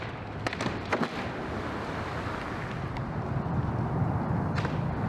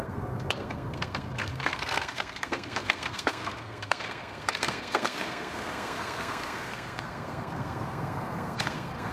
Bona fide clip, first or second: first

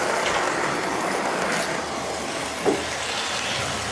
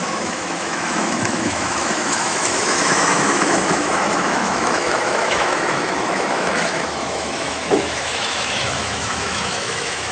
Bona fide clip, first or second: first